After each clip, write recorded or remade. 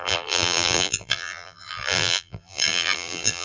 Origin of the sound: remade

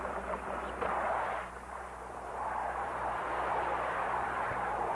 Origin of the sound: remade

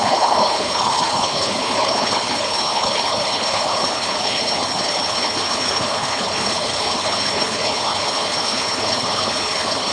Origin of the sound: remade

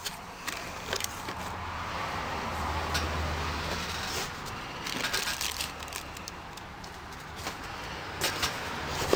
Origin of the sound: recorded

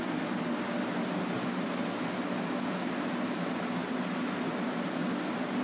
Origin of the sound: recorded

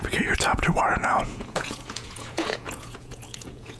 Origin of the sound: remade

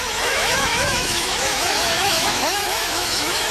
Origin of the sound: remade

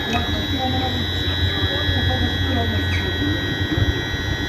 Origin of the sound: recorded